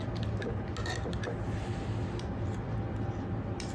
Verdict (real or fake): real